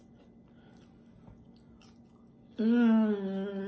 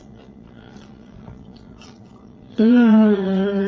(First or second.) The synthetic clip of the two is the second